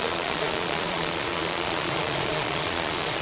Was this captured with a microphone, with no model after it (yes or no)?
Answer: no